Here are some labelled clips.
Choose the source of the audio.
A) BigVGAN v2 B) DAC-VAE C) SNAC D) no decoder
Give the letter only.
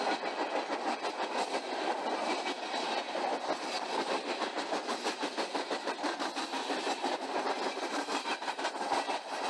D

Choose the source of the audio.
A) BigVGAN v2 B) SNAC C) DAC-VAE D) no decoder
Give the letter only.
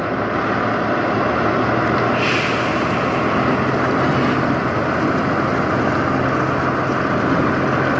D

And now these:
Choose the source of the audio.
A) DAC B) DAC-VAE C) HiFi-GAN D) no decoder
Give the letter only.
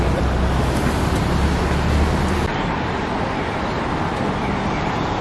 D